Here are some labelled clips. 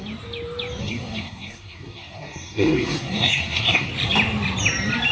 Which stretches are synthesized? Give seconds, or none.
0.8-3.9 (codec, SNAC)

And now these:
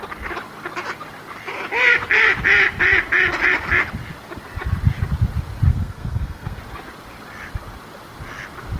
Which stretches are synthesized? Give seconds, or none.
5.7-6.6 (codec, SNAC)

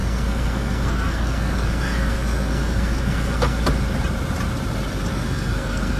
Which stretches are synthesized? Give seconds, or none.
0.0-3.6 (codec, SNAC); 5.1-6.0

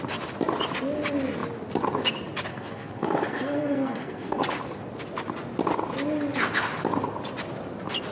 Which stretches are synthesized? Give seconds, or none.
2.5-4.4 (codec, SNAC)

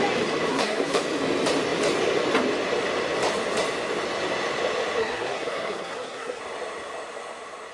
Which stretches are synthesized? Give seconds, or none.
0.5-1.0 (codec, SNAC); 5.0-6.4

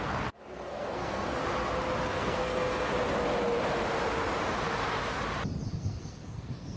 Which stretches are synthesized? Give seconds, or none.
0.0-1.4 (codec, SNAC); 2.1-2.9; 5.7-6.8

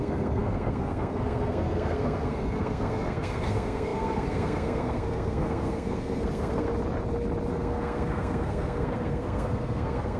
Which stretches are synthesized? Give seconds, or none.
0.0-6.7 (codec, SNAC); 7.5-10.2